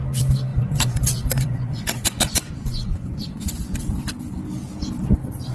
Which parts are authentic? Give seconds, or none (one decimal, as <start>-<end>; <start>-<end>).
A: 0.0-0.5; 3.8-5.5